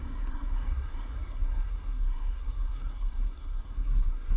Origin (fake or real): fake